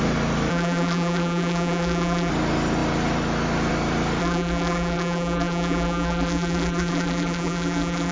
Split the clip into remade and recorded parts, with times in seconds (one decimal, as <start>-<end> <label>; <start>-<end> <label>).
0.0-0.5 recorded; 0.5-2.3 remade; 2.3-4.2 recorded; 4.2-8.1 remade